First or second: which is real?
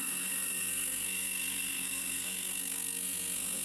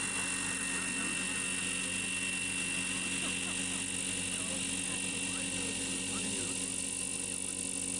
second